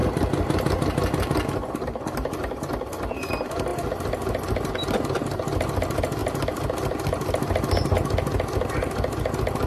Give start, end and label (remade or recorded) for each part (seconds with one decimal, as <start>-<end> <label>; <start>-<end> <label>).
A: 0.0-9.7 recorded